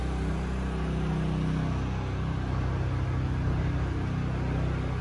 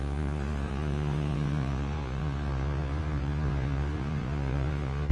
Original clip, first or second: first